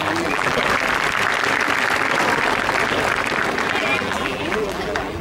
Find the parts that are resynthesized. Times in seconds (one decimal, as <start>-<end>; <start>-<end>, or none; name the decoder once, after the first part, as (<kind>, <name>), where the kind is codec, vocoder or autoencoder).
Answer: 0.0-0.6 (vocoder, BigVGAN v2); 3.7-5.2

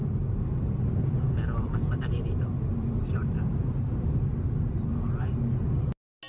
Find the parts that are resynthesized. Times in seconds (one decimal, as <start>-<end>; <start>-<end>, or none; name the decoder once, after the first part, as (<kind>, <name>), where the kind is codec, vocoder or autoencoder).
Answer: 0.0-4.9 (vocoder, BigVGAN v2)

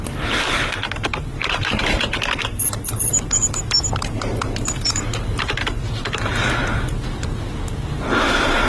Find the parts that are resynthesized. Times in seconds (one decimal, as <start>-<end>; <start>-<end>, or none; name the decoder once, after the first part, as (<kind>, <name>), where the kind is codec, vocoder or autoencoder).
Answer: 0.0-6.3 (vocoder, BigVGAN v2); 8.1-8.7

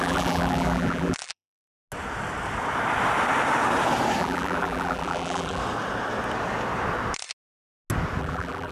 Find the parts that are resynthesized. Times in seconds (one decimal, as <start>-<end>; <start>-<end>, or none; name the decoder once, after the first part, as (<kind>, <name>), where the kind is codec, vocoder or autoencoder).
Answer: 0.0-1.7 (vocoder, BigVGAN v2); 4.2-5.6; 8.2-8.7